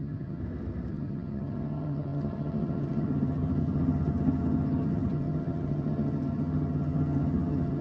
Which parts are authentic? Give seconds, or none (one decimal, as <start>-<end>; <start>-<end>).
0.4-0.9